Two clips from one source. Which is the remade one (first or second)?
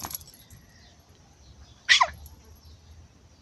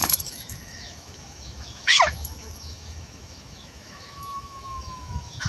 second